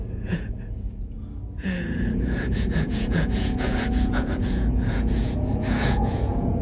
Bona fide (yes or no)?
no